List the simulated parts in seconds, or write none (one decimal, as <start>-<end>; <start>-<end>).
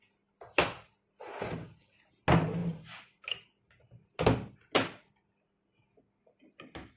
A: none